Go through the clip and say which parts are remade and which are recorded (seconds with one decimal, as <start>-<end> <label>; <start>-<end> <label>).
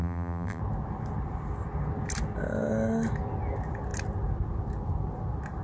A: 0.0-0.6 remade; 0.6-5.6 recorded